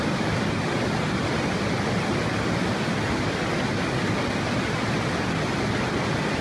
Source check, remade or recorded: recorded